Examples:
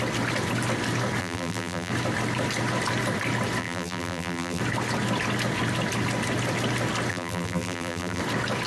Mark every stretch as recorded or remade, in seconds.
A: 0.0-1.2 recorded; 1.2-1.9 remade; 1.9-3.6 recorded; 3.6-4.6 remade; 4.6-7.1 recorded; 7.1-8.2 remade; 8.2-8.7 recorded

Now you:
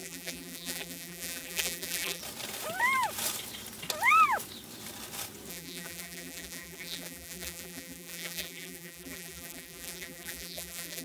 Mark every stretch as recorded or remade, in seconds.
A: 0.0-2.2 remade; 2.2-5.5 recorded; 5.5-11.0 remade

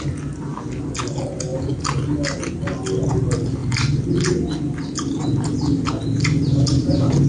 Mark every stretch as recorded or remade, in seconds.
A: 0.0-7.3 recorded

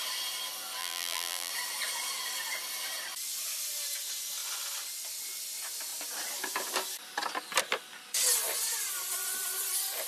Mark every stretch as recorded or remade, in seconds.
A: 0.0-0.8 recorded; 0.8-1.5 remade; 1.5-10.1 recorded

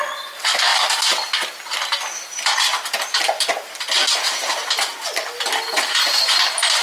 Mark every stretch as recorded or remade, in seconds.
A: 0.0-6.8 recorded